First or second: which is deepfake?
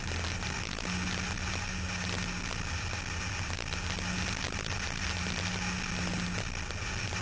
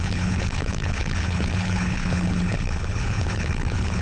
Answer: second